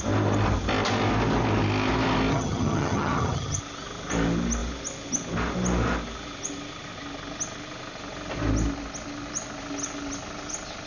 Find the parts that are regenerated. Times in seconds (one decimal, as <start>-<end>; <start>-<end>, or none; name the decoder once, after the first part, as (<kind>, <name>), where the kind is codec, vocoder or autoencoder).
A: 2.3-3.6 (vocoder, HiFi-GAN)